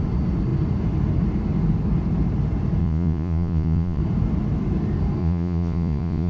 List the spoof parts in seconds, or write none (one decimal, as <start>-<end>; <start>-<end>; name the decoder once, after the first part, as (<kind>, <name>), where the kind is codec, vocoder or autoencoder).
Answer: 2.8-4.0 (vocoder, Vocos); 5.2-6.3